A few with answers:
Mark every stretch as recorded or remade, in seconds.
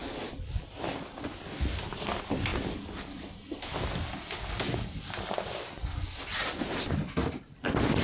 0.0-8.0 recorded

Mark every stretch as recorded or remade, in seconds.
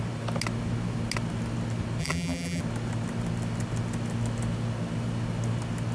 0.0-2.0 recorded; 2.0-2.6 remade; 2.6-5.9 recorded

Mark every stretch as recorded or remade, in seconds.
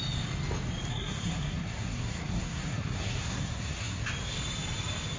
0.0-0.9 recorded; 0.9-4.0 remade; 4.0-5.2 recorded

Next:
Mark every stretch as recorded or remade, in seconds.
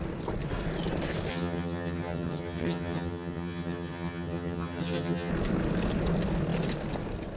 0.0-1.3 recorded; 1.3-5.3 remade; 5.3-7.4 recorded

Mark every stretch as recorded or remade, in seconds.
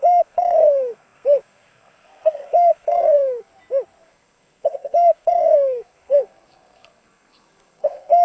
0.0-3.5 remade; 3.5-4.0 recorded; 4.0-8.2 remade